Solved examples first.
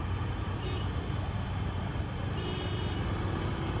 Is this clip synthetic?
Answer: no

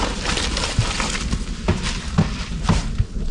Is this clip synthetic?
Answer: no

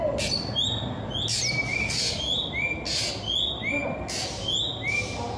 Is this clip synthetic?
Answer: no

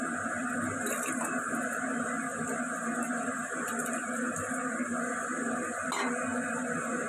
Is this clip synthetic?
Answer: no